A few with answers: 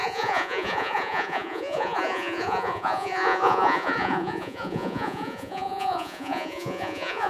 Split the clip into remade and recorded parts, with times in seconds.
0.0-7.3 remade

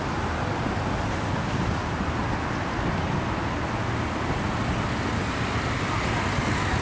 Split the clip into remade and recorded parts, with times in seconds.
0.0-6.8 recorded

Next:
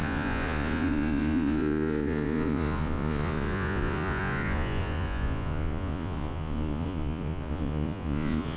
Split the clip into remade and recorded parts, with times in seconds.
0.0-8.6 remade